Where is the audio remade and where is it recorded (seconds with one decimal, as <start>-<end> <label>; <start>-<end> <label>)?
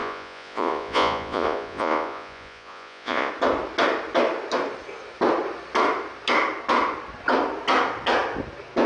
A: 0.0-3.3 remade; 3.3-8.9 recorded